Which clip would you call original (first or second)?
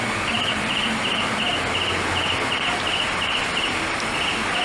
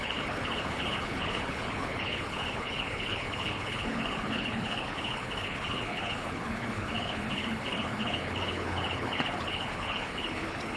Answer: first